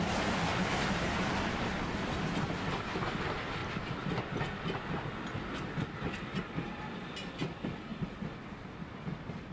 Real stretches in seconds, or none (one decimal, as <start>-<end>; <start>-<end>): 0.0-9.5